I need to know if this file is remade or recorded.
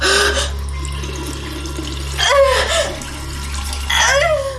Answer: recorded